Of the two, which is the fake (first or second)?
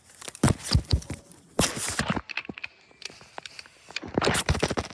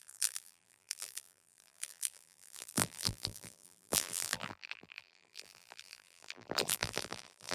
second